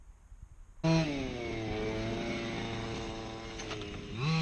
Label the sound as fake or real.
real